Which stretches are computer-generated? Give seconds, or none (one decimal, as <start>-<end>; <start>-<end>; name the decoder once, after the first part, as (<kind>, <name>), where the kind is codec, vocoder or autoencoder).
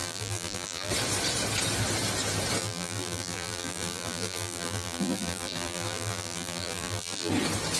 0.0-0.9 (vocoder, BigVGAN v2); 2.6-7.3